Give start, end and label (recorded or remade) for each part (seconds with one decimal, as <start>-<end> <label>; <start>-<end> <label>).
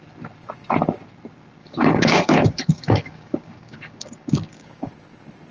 0.0-1.6 recorded; 1.6-4.9 remade; 4.9-5.5 recorded